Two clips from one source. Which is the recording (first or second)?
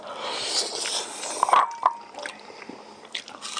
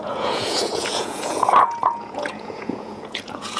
first